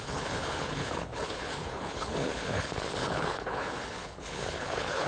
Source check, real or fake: fake